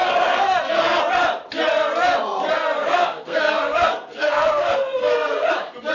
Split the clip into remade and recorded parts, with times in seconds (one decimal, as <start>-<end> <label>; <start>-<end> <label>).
0.0-1.0 remade; 1.0-2.8 recorded; 2.8-5.5 remade; 5.5-5.9 recorded